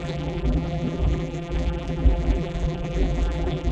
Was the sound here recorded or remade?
remade